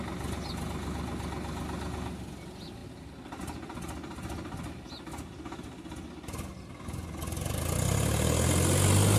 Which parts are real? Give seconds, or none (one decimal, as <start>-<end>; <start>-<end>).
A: 0.0-6.5; 7.2-9.2